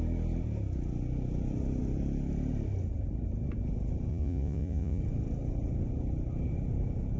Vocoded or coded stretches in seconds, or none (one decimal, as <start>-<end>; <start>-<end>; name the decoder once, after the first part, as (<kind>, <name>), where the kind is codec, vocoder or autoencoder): 4.1-5.0 (vocoder, Vocos)